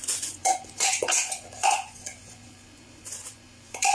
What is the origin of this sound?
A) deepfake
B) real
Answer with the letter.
A